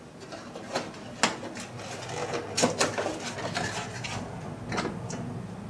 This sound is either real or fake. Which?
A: real